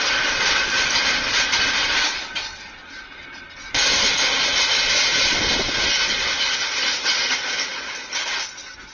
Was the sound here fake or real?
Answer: real